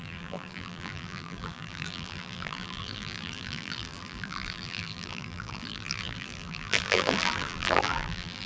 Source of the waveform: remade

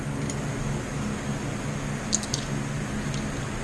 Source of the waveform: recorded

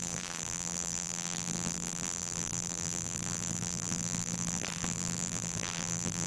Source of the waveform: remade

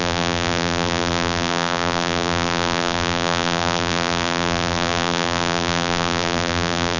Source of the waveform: remade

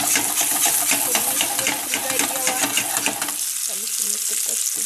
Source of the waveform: recorded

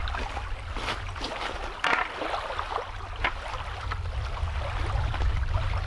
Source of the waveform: recorded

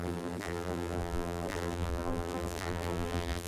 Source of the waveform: remade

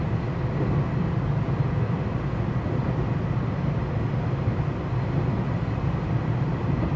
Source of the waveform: recorded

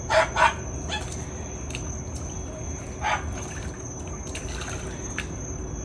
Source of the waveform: recorded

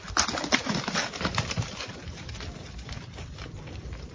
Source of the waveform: recorded